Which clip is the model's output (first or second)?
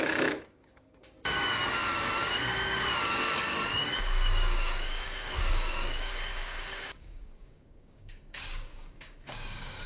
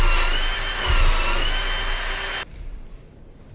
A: first